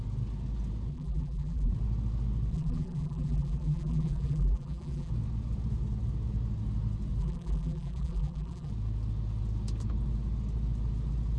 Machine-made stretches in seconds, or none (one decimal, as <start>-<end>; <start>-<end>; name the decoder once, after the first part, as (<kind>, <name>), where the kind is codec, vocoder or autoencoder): 0.9-1.7 (vocoder, BigVGAN v2); 2.5-5.1; 7.2-8.7

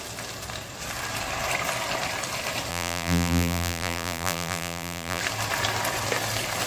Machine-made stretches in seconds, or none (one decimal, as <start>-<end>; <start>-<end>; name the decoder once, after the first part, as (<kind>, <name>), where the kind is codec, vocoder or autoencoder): 2.7-5.2 (vocoder, BigVGAN v2)

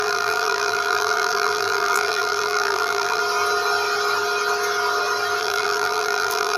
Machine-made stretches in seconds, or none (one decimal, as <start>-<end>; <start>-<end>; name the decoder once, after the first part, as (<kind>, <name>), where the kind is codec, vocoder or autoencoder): 0.0-3.2 (vocoder, BigVGAN v2); 5.4-6.6